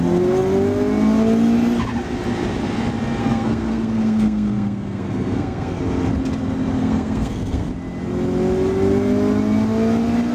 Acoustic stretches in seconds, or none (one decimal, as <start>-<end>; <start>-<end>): 0.0-3.2; 5.8-6.8; 7.7-10.3